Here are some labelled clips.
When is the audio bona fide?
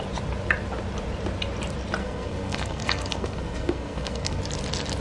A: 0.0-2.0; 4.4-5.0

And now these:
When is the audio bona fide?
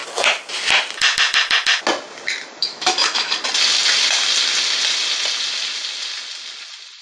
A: 0.0-2.6; 3.3-7.0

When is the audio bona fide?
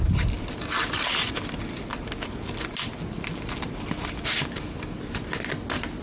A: 0.0-6.0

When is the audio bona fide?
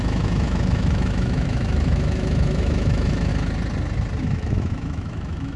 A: 3.3-4.2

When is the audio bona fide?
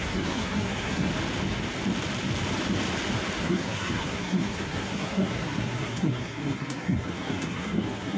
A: 1.1-3.4